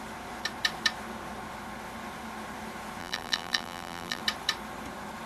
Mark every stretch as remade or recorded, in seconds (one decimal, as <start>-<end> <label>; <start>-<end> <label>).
0.0-3.0 recorded; 3.0-4.2 remade; 4.2-5.3 recorded